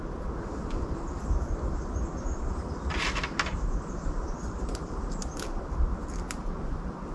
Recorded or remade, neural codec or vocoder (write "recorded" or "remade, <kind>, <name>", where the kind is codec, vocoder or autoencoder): recorded